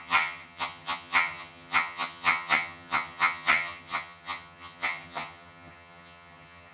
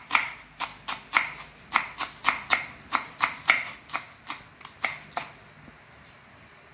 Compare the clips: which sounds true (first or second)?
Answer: second